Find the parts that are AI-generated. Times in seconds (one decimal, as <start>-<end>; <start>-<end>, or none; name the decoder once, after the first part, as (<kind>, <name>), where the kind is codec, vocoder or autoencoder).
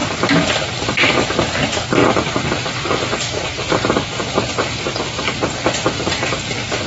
none